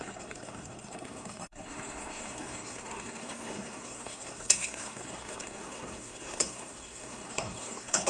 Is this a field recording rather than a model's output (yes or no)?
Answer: no